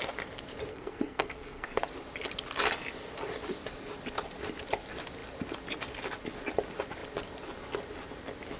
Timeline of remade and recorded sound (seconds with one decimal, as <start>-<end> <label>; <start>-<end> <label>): 0.0-0.7 recorded; 0.7-1.8 remade; 1.8-8.6 recorded